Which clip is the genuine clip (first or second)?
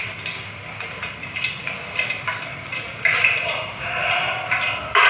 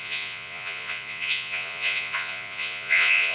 first